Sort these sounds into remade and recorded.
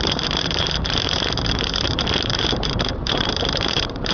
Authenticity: remade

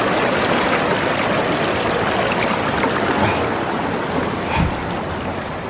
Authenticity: recorded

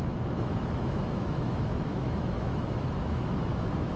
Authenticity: remade